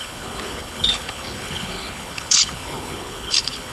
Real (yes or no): no